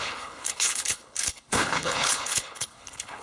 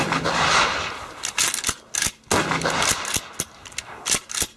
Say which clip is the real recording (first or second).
second